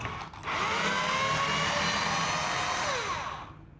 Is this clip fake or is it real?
real